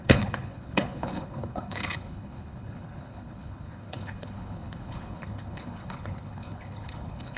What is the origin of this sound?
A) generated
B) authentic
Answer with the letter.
A